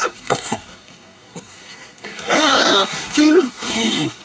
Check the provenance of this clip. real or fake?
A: fake